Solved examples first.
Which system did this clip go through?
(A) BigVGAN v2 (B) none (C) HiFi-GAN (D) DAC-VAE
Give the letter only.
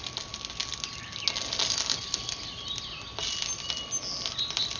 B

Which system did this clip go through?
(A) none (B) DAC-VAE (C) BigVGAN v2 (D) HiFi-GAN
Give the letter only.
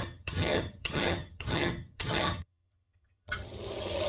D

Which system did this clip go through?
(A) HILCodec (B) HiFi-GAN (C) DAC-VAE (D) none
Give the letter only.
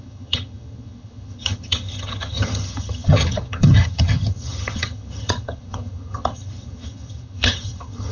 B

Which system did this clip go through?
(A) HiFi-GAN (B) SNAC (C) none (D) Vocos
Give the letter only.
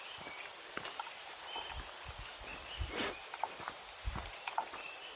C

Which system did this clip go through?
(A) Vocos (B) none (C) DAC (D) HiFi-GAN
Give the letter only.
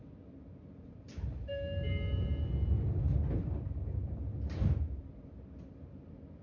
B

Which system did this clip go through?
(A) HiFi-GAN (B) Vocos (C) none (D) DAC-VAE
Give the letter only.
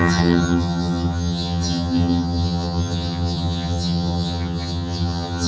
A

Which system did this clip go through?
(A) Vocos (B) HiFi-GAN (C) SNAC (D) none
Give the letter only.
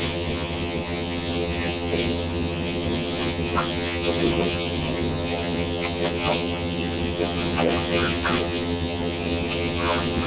B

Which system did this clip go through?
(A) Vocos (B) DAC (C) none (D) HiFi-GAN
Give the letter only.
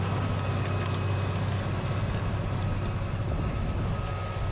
C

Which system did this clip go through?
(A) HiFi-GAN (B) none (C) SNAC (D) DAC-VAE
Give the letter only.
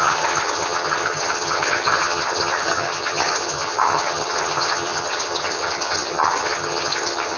A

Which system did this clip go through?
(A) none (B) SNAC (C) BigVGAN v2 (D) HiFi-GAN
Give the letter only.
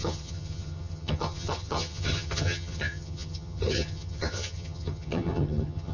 D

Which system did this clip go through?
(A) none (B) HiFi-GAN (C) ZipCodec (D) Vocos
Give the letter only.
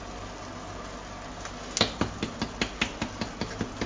A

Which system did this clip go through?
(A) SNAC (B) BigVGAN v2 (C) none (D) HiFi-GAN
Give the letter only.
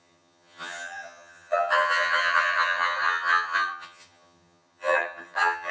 D